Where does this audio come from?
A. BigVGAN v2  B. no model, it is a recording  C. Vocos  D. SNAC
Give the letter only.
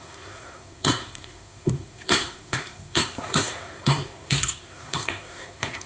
D